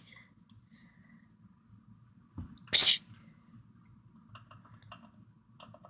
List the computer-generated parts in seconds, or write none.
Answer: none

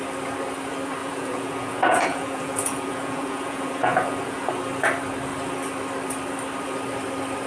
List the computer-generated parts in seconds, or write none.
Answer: 1.0-4.5

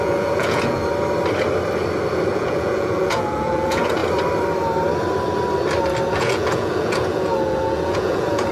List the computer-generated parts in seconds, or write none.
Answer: 0.0-0.8; 2.3-4.0; 6.1-8.5